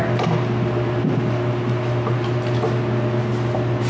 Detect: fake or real real